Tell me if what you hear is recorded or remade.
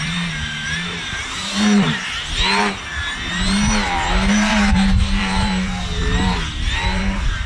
remade